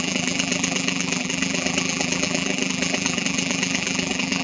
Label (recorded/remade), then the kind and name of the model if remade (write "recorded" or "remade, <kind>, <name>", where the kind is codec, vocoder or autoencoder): remade, vocoder, BigVGAN v2